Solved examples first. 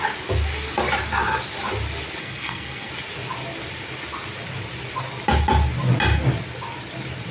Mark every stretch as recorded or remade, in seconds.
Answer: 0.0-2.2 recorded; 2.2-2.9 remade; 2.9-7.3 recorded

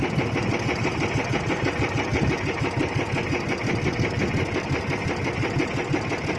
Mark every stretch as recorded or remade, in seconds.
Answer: 0.0-6.4 recorded

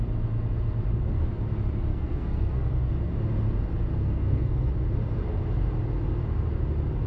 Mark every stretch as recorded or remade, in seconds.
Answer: 0.0-1.9 recorded; 1.9-2.9 remade; 2.9-3.9 recorded; 3.9-4.7 remade; 4.7-7.1 recorded